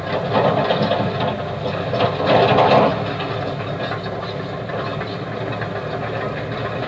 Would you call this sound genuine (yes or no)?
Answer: yes